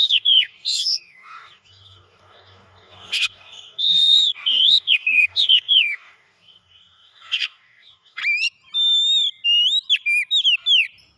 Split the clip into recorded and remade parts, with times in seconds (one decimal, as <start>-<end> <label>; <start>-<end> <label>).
0.0-8.2 remade; 8.2-11.2 recorded